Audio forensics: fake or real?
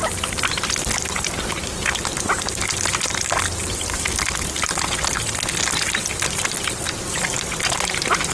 real